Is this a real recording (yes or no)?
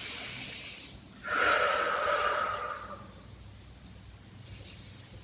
yes